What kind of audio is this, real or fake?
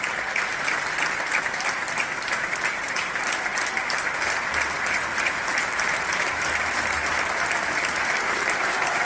real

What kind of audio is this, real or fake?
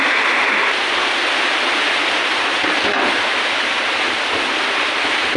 real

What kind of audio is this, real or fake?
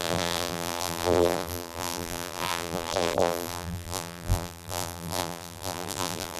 fake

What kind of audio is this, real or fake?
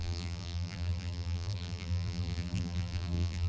fake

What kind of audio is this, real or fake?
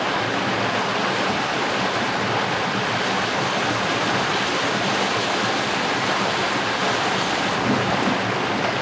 real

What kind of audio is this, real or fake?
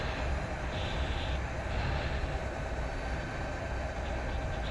real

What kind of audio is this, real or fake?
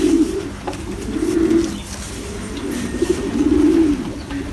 real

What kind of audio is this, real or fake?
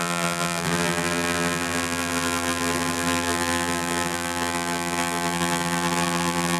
fake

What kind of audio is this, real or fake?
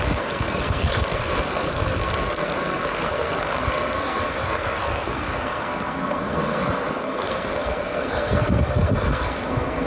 fake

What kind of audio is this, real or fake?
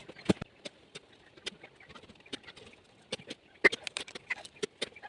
real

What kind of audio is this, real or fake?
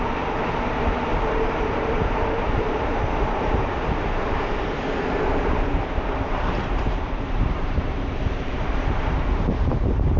fake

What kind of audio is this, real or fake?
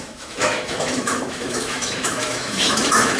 fake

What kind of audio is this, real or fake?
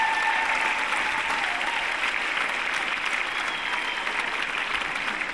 real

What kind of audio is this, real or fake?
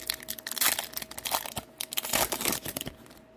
real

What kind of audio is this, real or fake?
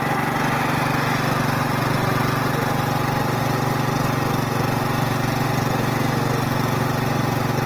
real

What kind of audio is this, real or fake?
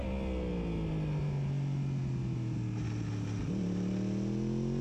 real